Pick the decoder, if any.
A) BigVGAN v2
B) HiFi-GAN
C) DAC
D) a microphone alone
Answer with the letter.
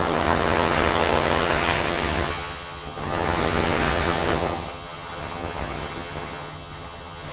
B